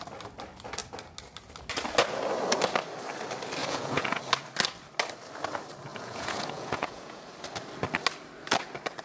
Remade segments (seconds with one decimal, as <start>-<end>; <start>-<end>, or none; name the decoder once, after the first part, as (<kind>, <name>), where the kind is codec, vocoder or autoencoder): 3.6-4.2 (vocoder, Vocos); 5.9-7.2

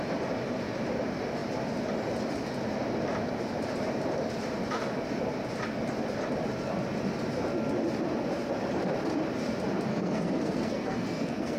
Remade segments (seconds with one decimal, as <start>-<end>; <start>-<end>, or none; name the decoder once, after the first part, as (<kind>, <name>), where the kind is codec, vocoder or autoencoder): 9.9-11.6 (codec, SNAC)

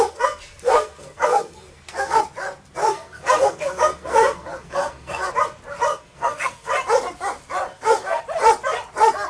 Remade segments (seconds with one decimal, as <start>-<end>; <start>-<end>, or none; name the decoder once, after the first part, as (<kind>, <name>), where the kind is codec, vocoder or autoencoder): 0.0-2.2 (codec, SNAC); 2.8-5.3; 5.9-6.7; 7.7-8.2

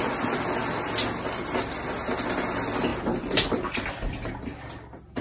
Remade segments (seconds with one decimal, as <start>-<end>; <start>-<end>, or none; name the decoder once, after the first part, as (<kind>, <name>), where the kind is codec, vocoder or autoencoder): none

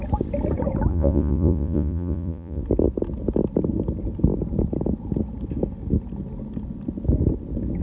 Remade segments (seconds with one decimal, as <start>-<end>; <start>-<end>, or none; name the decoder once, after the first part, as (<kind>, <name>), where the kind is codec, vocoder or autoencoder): 0.9-2.6 (vocoder, Vocos)

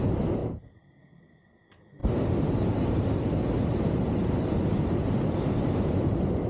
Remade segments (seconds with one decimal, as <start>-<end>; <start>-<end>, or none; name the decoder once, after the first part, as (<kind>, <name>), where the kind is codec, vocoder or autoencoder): none